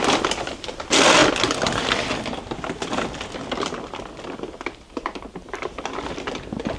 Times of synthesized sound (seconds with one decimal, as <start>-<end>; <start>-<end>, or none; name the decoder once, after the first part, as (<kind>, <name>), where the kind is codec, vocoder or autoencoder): none